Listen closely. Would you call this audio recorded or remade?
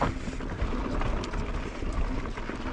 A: recorded